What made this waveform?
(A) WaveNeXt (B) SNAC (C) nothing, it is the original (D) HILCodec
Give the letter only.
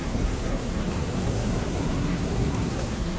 B